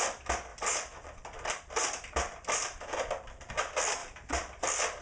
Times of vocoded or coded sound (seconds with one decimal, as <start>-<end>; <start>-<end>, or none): 0.5-3.5; 4.0-4.6